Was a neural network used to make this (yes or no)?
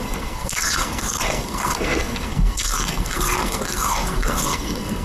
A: yes